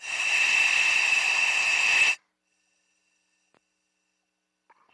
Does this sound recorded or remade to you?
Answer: recorded